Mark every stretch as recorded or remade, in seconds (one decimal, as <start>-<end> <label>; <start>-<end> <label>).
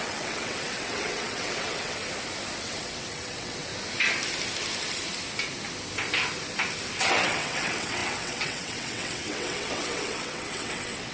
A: 0.0-2.0 remade; 2.0-2.6 recorded; 2.6-3.7 remade; 3.7-7.0 recorded; 7.0-11.1 remade